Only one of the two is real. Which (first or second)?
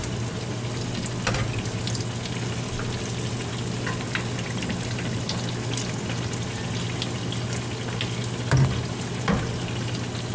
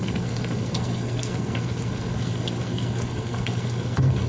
first